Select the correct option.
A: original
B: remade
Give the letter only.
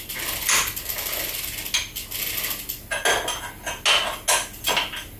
A